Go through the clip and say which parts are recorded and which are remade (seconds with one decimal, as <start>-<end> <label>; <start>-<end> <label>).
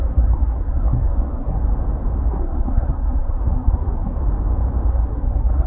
0.0-1.6 remade; 1.6-2.3 recorded; 2.3-4.2 remade; 4.2-4.9 recorded; 4.9-5.7 remade